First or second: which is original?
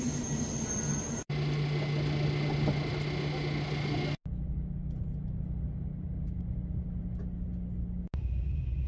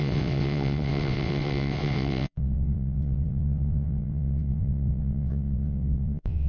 first